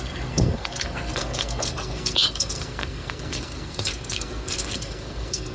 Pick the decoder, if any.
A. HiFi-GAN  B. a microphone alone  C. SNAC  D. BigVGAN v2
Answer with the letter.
C